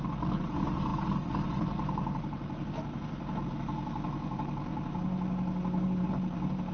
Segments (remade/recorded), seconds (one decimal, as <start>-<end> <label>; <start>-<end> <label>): 0.0-6.7 recorded